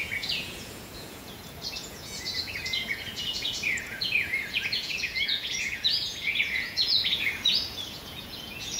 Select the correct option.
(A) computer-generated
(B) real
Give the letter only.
A